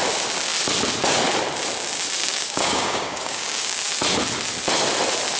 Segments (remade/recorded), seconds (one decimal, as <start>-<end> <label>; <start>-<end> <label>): 0.0-2.2 recorded; 2.2-3.8 remade; 3.8-5.4 recorded